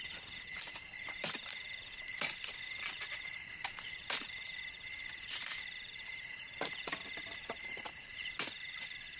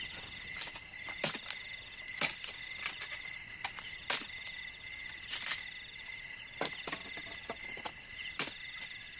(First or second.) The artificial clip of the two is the first